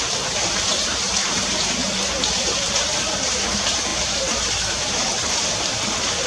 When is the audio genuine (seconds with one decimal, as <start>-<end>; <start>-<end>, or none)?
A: none